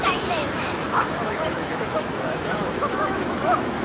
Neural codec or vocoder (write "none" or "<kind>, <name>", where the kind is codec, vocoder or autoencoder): autoencoder, DAC-VAE